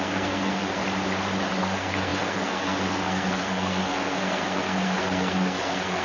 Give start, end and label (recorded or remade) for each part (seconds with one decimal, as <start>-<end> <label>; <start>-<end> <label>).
0.0-0.8 remade; 0.8-1.6 recorded; 1.6-6.0 remade